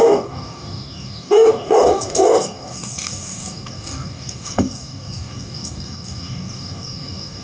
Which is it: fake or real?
fake